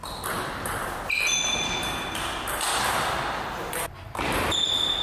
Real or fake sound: real